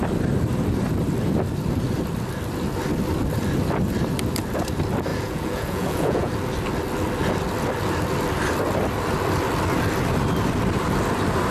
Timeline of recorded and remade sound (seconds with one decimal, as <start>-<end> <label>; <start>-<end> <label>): 0.0-5.1 recorded; 5.1-6.3 remade; 6.3-11.5 recorded